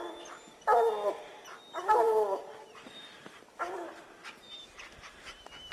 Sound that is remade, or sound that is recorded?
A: recorded